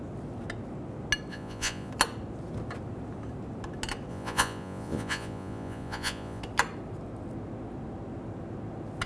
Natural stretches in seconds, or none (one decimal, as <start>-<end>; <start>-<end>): 0.0-1.3; 1.9-4.1; 6.4-9.1